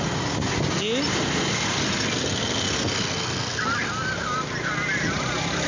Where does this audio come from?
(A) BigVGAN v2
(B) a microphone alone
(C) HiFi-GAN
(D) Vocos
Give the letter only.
B